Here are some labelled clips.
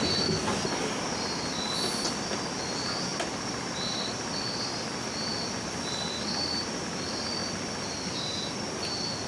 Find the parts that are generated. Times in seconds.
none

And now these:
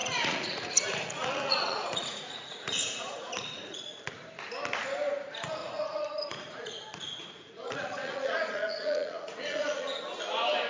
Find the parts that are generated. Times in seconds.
0.0-4.1 (vocoder, Vocos); 5.6-10.2